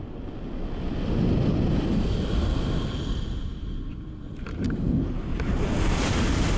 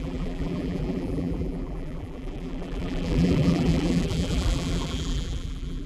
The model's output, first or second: second